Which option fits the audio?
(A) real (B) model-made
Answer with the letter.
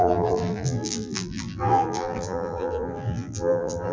B